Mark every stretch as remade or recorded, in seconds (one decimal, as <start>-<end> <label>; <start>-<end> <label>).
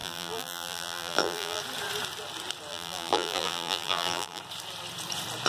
0.0-1.6 remade; 1.6-2.7 recorded; 2.7-4.4 remade; 4.4-5.5 recorded